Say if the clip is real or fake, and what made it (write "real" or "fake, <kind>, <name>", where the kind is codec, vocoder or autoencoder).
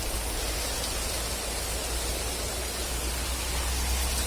real